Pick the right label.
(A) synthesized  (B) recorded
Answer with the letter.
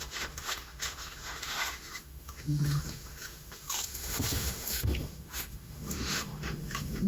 A